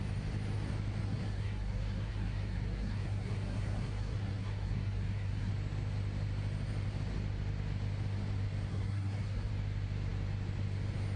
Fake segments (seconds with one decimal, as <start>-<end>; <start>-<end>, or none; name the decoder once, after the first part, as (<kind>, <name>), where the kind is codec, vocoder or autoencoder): 1.0-5.5 (codec, SNAC); 8.7-9.5